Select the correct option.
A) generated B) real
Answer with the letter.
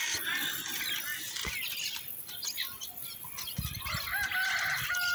B